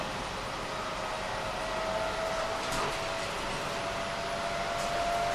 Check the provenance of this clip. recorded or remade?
recorded